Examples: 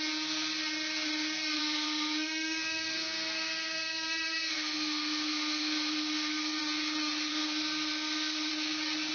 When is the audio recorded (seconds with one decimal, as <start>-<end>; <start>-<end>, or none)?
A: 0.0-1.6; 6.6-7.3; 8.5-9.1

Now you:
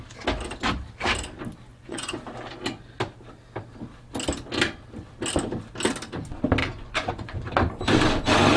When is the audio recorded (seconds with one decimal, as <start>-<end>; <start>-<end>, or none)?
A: 0.0-1.7; 2.2-6.6; 7.5-8.6

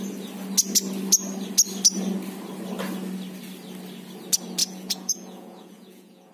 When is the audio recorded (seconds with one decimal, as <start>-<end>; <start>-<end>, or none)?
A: 0.0-4.6

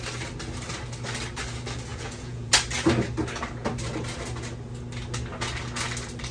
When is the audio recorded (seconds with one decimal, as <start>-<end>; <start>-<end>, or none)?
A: 0.0-1.9; 2.5-6.3